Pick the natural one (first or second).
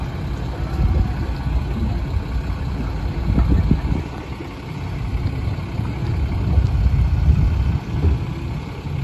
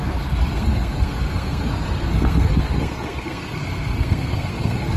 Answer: first